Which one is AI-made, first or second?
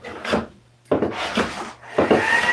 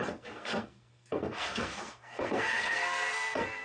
second